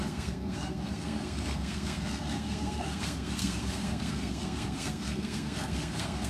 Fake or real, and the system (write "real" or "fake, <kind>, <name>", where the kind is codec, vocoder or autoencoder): fake, codec, SNAC